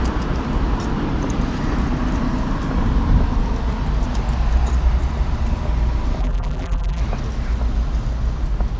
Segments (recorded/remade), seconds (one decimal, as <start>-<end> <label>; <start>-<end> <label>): 0.0-6.2 recorded; 6.2-7.0 remade; 7.0-8.8 recorded